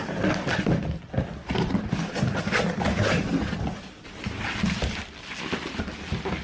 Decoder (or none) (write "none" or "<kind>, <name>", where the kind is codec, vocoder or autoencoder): none